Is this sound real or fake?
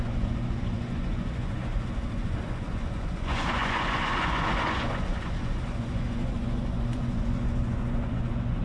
fake